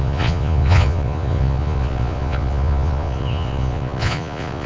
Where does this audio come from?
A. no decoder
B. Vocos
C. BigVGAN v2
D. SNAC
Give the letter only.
B